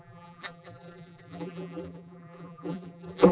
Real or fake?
fake